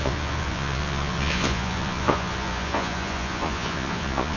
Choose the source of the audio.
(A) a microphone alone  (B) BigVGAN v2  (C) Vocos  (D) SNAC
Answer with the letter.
C